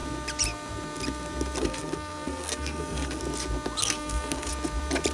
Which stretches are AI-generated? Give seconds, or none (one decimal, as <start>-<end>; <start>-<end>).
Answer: 1.6-3.2; 3.8-4.5